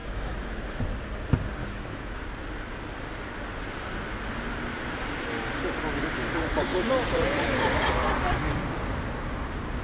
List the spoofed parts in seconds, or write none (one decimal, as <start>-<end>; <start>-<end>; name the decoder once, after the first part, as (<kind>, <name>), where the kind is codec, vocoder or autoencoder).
0.0-0.8 (autoencoder, DAC-VAE); 1.6-2.2